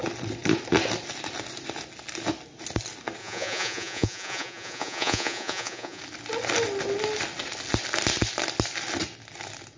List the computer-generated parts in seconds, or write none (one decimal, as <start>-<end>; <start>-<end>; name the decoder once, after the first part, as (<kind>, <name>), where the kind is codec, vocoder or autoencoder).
3.2-6.0 (vocoder, Vocos)